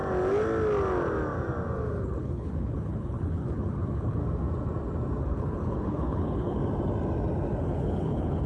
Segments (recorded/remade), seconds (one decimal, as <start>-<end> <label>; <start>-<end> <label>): 0.0-2.0 recorded; 2.0-4.2 remade; 4.2-5.2 recorded; 5.2-6.6 remade; 6.6-7.6 recorded; 7.6-8.5 remade